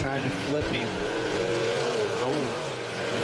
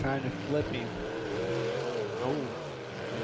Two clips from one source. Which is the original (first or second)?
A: second